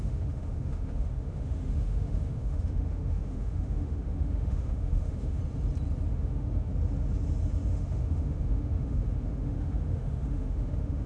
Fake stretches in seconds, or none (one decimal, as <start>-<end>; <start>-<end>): 0.0-5.4; 6.1-6.7; 7.7-11.1